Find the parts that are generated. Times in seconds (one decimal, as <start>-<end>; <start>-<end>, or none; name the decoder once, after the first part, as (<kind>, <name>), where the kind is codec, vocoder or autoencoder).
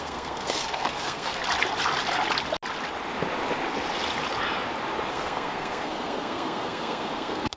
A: 0.0-1.4 (codec, SNAC); 5.1-7.6